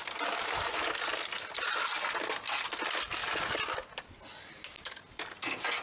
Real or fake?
real